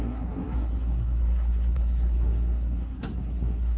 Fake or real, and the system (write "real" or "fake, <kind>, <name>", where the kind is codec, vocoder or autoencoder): fake, codec, SNAC